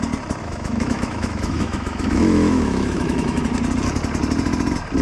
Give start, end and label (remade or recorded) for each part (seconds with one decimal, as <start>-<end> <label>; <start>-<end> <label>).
0.0-0.4 recorded; 0.4-3.4 remade; 3.4-5.0 recorded